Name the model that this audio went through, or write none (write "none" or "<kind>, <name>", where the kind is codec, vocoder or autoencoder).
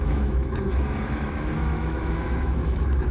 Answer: autoencoder, DAC-VAE